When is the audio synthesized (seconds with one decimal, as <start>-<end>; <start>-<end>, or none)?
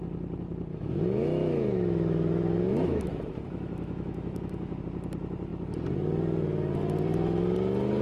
0.7-4.8